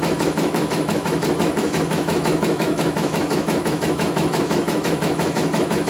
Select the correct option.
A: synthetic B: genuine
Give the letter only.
A